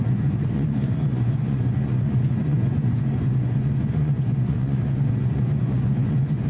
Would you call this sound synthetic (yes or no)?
yes